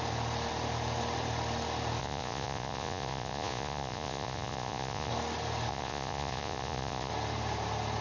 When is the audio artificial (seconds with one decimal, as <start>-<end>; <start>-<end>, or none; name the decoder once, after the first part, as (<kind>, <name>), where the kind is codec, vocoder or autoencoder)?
2.0-5.1 (vocoder, Vocos); 5.7-7.1